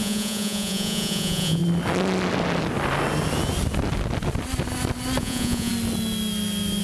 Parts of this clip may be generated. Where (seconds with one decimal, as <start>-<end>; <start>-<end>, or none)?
0.0-1.6; 5.2-5.7